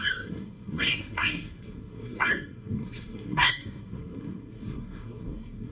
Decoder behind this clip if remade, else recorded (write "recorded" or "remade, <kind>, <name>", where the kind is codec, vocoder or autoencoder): remade, codec, SNAC